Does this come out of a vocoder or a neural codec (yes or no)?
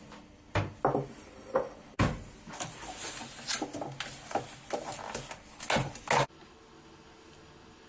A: no